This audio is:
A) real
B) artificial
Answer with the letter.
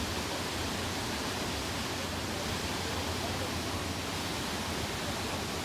A